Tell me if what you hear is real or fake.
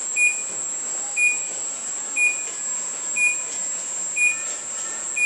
real